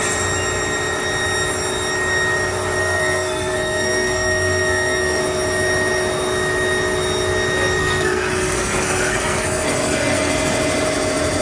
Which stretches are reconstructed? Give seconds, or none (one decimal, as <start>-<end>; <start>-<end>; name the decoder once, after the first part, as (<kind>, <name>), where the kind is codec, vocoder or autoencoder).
2.8-5.2 (codec, SNAC); 7.8-10.3